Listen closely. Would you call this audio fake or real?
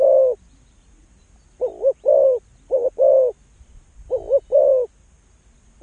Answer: real